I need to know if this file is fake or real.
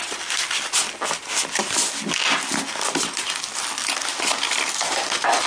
real